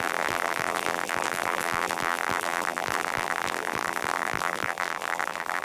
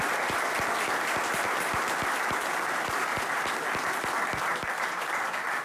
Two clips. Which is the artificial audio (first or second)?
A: first